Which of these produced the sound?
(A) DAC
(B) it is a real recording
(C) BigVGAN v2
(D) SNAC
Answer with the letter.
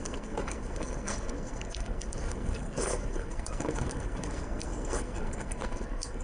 D